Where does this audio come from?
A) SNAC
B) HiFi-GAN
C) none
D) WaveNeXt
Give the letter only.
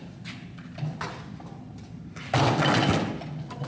C